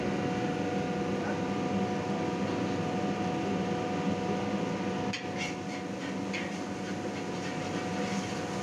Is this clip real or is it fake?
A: real